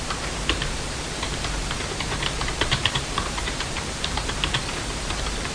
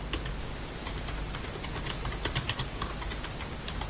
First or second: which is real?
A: second